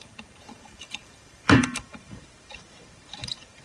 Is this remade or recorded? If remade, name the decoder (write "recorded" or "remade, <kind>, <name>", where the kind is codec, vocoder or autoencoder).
remade, vocoder, BigVGAN v2